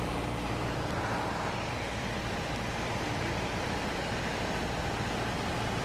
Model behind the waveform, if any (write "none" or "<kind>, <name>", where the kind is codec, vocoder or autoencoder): vocoder, BigVGAN v2